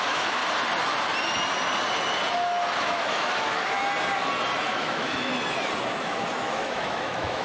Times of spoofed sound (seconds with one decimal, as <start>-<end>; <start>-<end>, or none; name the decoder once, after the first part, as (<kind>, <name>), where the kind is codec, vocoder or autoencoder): 0.0-0.4 (autoencoder, DAC-VAE); 2.8-3.8; 4.7-5.3; 6.0-7.4